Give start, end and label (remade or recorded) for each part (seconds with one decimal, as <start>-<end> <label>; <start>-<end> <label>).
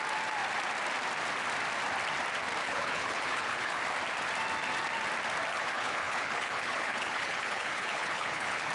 0.0-2.6 recorded; 2.6-3.8 remade; 3.8-5.5 recorded; 5.5-8.7 remade